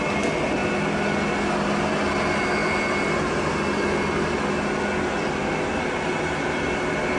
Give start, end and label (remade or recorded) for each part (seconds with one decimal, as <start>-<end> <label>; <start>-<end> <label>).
0.0-7.2 recorded